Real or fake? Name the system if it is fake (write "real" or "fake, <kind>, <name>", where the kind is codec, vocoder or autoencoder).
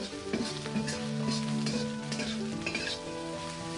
real